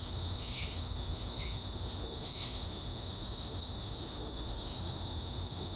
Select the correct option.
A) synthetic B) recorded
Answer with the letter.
A